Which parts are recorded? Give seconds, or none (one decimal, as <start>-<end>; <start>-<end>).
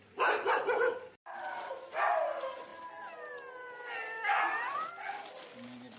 0.0-6.0